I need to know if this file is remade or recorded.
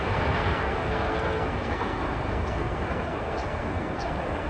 remade